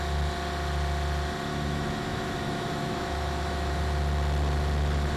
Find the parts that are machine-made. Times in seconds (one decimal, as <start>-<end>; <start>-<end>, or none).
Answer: 1.5-3.7